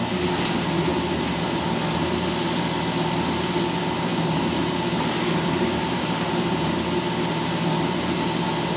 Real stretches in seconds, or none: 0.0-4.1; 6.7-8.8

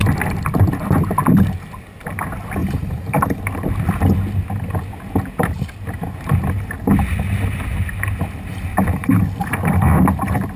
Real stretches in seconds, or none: 0.0-2.6; 3.4-8.5; 9.2-10.6

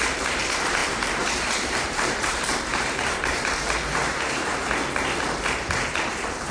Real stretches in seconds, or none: 4.5-5.0

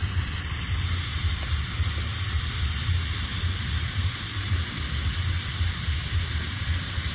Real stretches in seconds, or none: 0.8-7.1